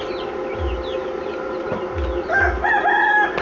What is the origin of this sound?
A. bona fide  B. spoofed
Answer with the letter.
A